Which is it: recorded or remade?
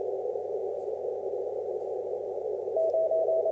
recorded